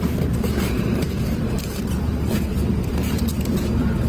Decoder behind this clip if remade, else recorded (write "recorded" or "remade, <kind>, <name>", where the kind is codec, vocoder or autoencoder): remade, vocoder, BigVGAN v2